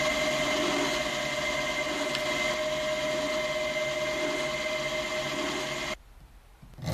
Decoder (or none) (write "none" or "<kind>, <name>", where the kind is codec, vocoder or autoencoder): none